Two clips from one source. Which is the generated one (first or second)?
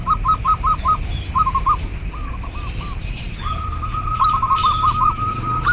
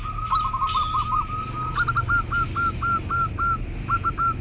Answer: first